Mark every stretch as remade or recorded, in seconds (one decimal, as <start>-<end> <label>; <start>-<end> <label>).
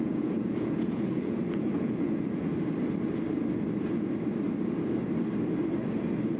0.0-2.5 remade; 2.5-6.4 recorded